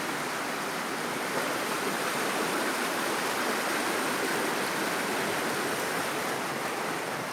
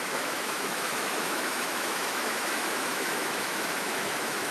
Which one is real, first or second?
first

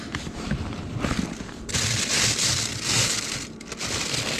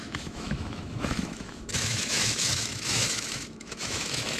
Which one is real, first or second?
first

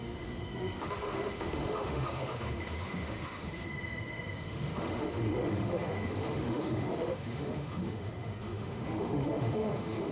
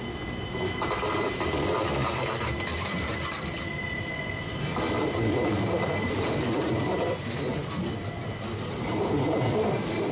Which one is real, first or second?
second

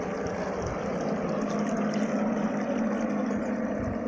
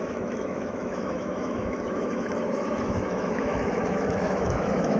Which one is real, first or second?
first